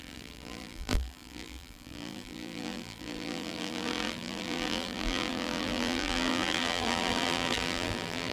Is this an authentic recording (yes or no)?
no